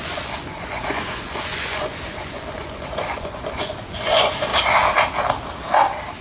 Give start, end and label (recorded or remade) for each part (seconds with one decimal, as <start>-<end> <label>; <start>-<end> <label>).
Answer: 0.0-4.5 remade; 4.5-6.2 recorded